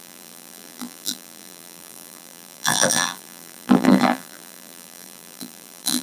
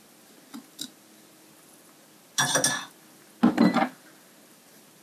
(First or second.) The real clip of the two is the second